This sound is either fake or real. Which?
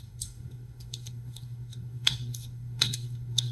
fake